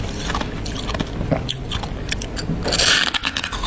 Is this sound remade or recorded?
recorded